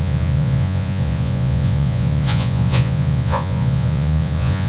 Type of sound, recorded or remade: remade